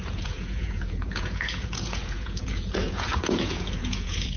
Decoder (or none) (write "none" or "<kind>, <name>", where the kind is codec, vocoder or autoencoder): vocoder, Vocos